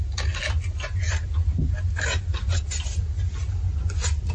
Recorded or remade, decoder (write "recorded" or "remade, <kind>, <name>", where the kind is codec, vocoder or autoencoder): recorded